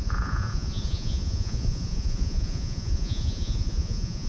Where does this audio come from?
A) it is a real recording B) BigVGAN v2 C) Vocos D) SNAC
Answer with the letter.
C